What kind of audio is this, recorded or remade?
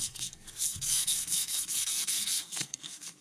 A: remade